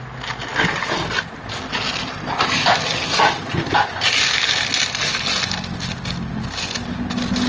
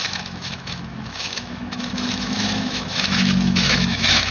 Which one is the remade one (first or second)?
second